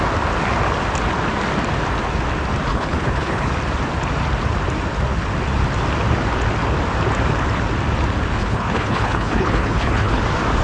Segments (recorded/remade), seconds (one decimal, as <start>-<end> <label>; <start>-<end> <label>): 0.0-2.7 recorded; 2.7-3.5 remade; 3.5-8.4 recorded; 8.4-10.2 remade; 10.2-10.6 recorded